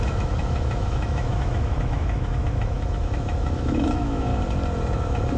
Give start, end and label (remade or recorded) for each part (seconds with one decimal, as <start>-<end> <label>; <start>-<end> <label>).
0.0-4.3 remade; 4.3-4.9 recorded; 4.9-5.4 remade